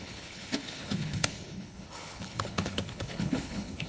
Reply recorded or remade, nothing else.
remade